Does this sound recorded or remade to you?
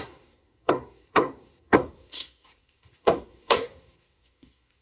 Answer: remade